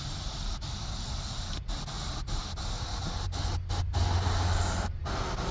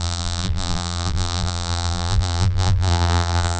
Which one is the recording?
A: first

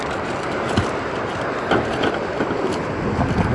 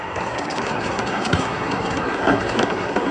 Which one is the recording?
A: first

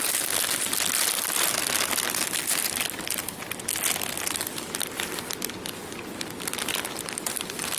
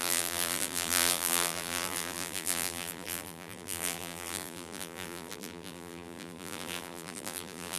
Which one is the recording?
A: first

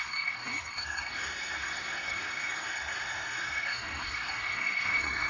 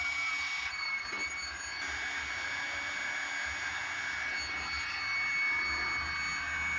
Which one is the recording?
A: second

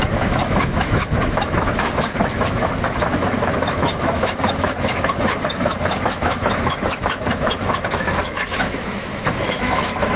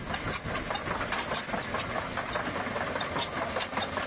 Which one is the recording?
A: second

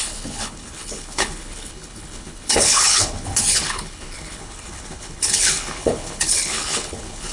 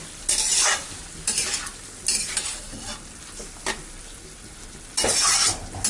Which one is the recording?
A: second